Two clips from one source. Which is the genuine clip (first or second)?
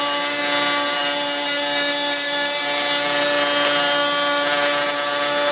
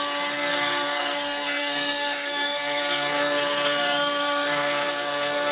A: first